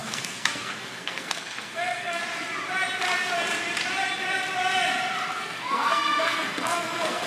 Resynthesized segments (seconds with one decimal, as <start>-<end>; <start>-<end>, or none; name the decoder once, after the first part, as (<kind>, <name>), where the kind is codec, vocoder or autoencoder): 0.0-2.2 (codec, SNAC); 5.4-7.3